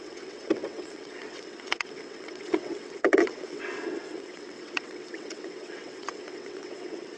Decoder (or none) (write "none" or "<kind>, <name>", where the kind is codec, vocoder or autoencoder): vocoder, WaveNeXt